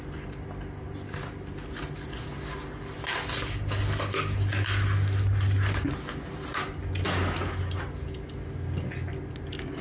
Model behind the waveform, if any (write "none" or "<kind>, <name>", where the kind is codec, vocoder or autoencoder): none